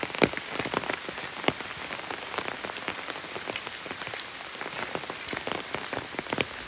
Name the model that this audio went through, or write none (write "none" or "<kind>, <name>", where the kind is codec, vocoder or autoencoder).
none